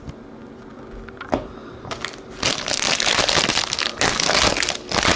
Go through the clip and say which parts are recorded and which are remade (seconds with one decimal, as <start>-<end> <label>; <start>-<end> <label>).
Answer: 0.0-5.2 recorded